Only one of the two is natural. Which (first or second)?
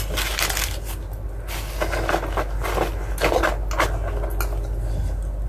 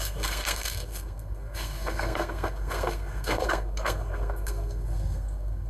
first